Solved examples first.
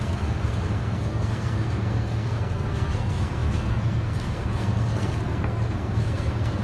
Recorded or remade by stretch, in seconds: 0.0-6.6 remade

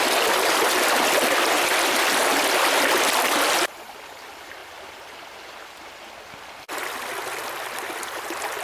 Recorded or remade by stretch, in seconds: 0.0-8.6 recorded

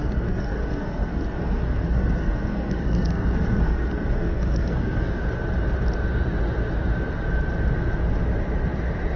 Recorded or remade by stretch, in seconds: 0.0-5.2 remade; 5.2-9.2 recorded

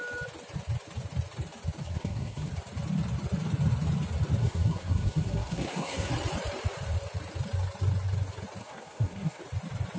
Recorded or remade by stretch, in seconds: 0.0-1.8 recorded; 1.8-2.5 remade; 2.5-4.4 recorded; 4.4-6.1 remade; 6.1-8.6 recorded; 8.6-9.4 remade; 9.4-10.0 recorded